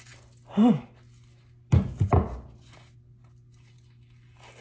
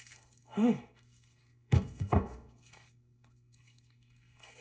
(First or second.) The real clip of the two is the first